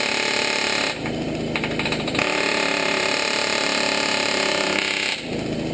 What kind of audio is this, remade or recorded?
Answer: remade